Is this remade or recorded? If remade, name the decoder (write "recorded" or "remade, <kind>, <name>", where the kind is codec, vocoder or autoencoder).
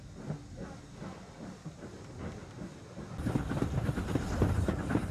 recorded